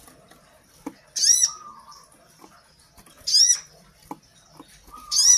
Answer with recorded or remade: recorded